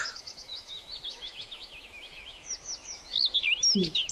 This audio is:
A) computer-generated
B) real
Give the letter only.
A